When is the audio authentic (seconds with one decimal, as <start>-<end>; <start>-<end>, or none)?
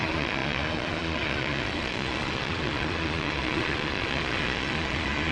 none